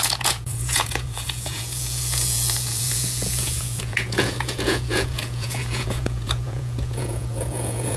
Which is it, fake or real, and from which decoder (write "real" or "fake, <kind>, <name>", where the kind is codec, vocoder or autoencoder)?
fake, vocoder, Vocos